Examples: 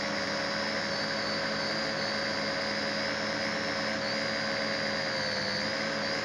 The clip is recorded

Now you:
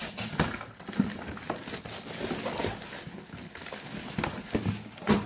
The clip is recorded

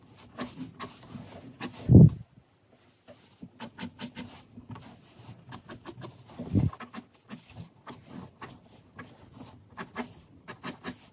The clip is recorded